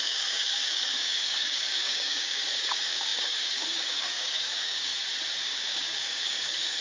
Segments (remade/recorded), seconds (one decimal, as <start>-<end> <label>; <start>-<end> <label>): 0.0-4.9 remade; 4.9-5.4 recorded; 5.4-6.8 remade